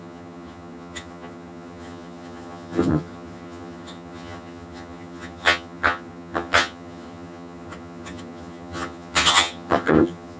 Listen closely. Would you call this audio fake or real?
fake